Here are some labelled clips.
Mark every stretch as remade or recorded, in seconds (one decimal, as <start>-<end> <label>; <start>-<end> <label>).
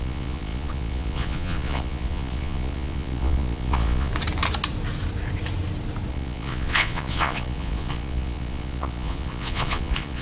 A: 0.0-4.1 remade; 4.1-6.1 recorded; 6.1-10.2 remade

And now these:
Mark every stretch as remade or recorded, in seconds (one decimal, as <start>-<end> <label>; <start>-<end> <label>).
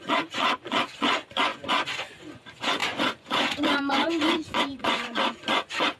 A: 0.0-6.0 remade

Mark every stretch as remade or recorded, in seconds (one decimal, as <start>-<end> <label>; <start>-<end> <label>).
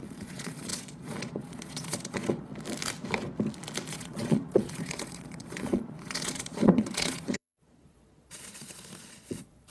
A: 0.0-2.5 remade; 2.5-3.9 recorded; 3.9-9.7 remade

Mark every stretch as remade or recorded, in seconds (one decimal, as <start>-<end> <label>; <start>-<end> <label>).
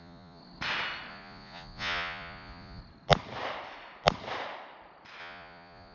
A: 0.0-0.4 remade; 0.4-1.1 recorded; 1.1-2.8 remade; 2.8-5.2 recorded; 5.2-5.9 remade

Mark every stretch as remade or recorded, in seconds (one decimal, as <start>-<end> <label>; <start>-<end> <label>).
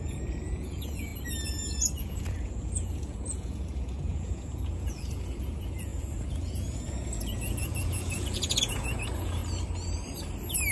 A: 0.0-1.1 remade; 1.1-2.0 recorded; 2.0-9.4 remade; 9.4-10.7 recorded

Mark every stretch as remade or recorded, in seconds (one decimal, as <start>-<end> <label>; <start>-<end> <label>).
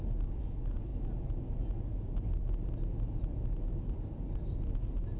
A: 0.0-5.2 recorded